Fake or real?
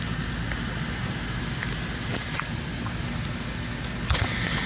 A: real